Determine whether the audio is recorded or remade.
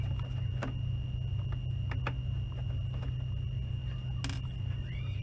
recorded